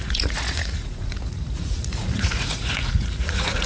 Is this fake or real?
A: fake